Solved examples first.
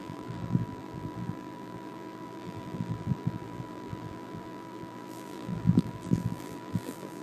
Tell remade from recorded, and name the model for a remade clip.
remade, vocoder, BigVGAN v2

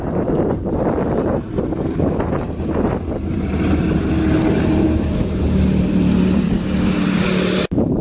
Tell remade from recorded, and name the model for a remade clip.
remade, vocoder, BigVGAN v2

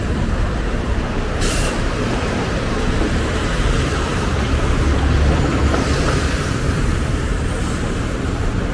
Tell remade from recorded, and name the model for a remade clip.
remade, vocoder, BigVGAN v2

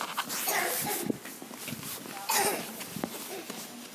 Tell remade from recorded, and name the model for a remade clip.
recorded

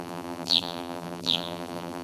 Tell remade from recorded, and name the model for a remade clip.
remade, vocoder, BigVGAN v2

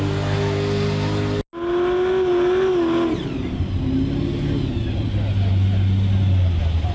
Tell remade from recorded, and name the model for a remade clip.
recorded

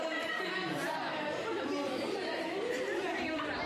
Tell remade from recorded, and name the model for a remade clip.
remade, vocoder, BigVGAN v2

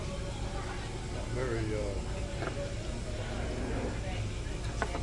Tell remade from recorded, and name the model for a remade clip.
recorded